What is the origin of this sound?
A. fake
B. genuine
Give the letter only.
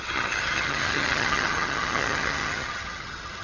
A